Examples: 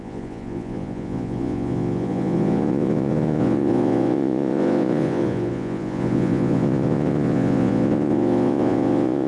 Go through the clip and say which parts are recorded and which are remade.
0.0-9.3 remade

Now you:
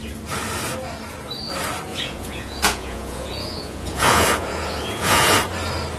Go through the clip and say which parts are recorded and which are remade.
0.0-1.9 recorded; 1.9-5.3 remade; 5.3-6.0 recorded

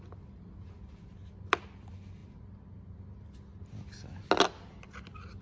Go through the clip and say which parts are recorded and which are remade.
0.0-5.4 recorded

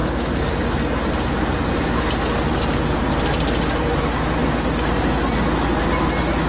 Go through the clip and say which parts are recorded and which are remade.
0.0-6.5 recorded

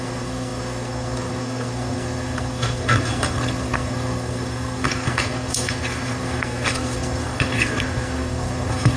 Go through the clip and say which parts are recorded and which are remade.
0.0-9.0 remade